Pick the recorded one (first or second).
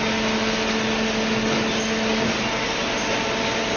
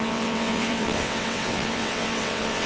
first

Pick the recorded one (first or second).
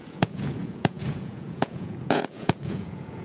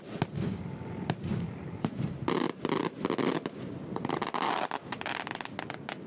second